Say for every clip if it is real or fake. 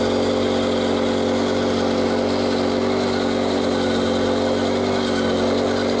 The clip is real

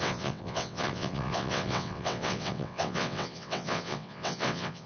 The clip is fake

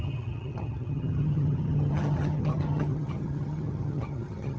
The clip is fake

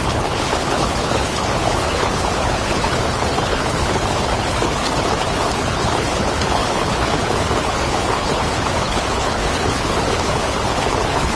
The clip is fake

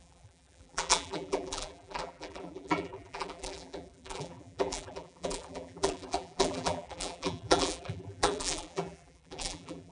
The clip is fake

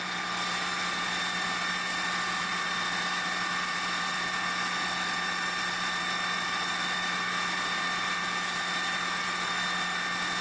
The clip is real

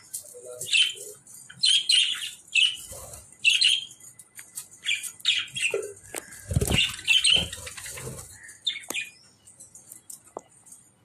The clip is real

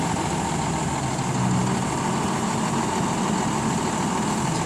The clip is real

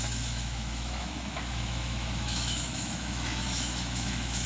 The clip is fake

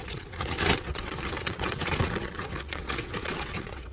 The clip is fake